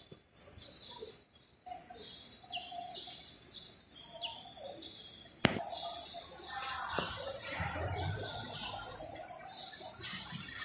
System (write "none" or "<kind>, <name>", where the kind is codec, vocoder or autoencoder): none